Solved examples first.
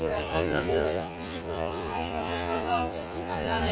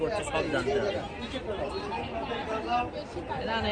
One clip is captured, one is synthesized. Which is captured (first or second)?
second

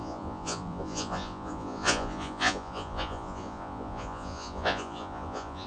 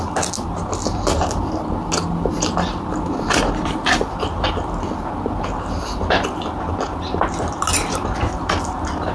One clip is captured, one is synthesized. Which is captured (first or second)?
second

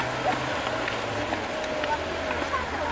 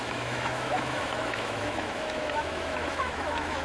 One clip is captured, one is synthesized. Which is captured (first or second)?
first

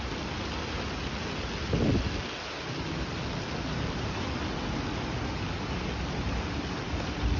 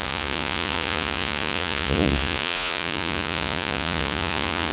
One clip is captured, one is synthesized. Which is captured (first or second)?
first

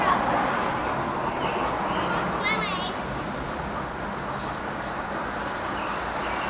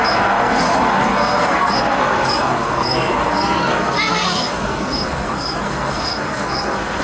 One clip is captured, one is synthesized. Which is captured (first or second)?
first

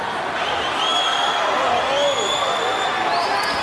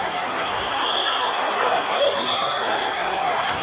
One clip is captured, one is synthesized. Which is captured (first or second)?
first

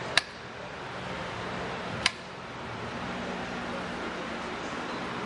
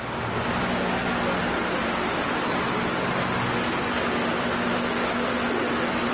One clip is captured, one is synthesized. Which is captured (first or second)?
second